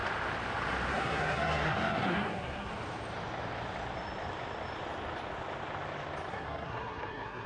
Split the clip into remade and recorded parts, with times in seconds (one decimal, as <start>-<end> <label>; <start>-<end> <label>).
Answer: 0.0-0.9 recorded; 0.9-2.7 remade; 2.7-6.3 recorded; 6.3-7.5 remade